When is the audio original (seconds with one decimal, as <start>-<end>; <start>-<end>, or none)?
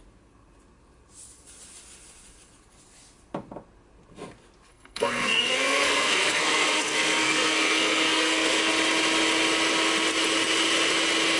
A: 0.0-4.7; 8.7-11.4